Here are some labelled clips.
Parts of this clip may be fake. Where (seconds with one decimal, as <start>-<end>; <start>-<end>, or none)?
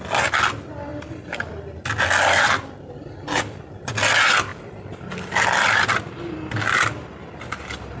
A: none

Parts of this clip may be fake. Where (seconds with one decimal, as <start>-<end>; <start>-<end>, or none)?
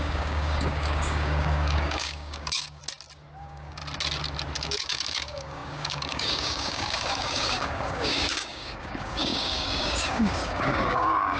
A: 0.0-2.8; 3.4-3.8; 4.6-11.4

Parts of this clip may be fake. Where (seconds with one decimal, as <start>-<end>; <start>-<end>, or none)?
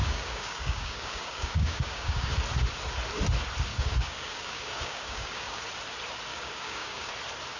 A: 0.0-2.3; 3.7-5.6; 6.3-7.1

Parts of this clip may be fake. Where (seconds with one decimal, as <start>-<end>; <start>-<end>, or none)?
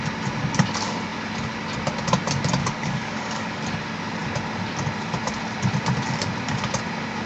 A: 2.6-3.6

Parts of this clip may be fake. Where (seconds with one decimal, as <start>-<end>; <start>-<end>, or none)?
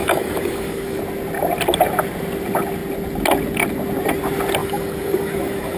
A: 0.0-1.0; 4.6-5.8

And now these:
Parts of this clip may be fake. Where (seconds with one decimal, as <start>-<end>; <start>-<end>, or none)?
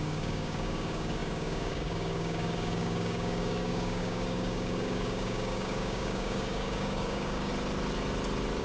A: 0.0-7.5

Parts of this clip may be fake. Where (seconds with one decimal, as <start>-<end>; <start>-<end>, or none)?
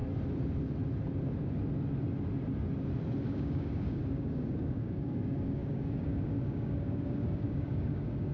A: 3.3-8.3